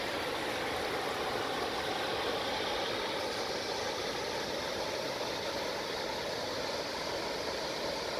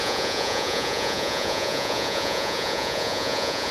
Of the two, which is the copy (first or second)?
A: second